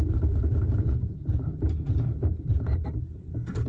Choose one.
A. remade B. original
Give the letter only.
A